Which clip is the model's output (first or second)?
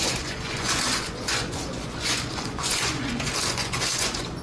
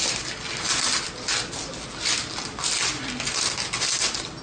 first